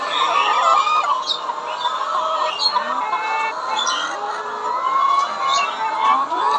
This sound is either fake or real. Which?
real